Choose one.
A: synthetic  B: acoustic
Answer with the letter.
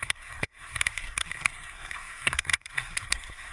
A